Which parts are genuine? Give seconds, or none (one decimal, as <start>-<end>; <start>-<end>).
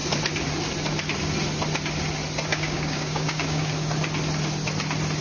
0.0-2.5; 3.7-5.2